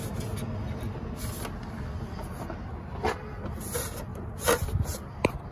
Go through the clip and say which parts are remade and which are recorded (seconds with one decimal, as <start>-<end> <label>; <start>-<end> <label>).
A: 0.0-4.1 recorded; 4.1-5.5 remade